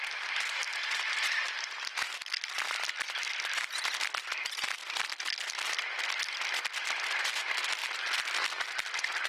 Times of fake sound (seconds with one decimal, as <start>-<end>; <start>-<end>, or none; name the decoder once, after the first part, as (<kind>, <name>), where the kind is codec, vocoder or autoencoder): 0.0-9.3 (vocoder, BigVGAN v2)